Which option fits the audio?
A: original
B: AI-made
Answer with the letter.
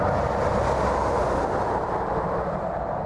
A